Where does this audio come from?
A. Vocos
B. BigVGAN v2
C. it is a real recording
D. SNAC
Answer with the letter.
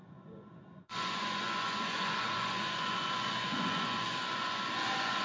A